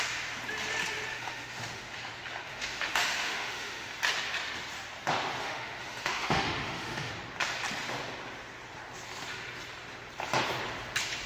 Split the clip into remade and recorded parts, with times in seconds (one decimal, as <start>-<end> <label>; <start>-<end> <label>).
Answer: 0.0-1.1 recorded; 1.1-2.1 remade; 2.1-2.5 recorded; 2.5-3.9 remade; 3.9-5.4 recorded; 5.4-7.1 remade; 7.1-11.3 recorded